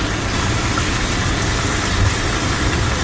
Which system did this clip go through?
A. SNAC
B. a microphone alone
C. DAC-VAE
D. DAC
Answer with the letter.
B